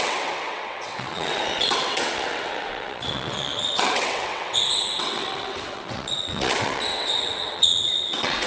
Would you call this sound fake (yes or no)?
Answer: yes